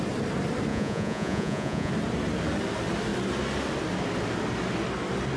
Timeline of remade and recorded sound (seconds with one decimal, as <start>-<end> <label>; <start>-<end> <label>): 0.0-0.7 recorded; 0.7-1.9 remade; 1.9-5.4 recorded